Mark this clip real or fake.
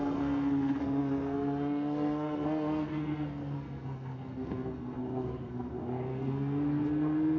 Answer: fake